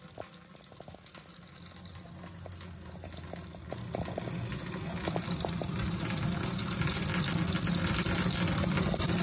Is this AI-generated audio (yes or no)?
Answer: no